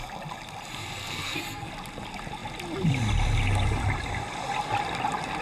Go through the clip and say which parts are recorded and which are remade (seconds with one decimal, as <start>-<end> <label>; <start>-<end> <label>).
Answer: 0.0-1.0 recorded; 1.0-1.7 remade; 1.7-5.4 recorded